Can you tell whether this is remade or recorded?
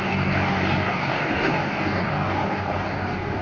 remade